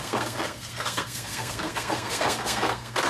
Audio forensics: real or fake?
fake